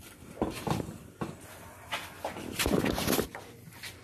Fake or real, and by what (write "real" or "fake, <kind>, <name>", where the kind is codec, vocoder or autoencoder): fake, vocoder, BigVGAN v2